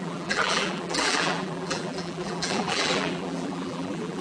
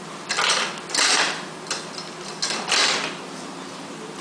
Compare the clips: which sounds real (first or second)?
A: second